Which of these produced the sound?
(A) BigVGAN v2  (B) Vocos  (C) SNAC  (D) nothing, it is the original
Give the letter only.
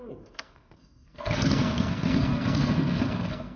C